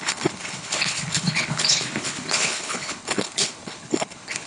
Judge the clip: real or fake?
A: fake